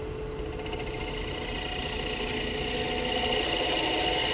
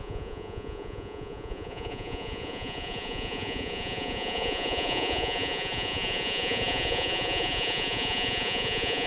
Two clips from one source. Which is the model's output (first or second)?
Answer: second